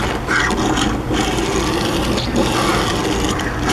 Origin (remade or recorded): recorded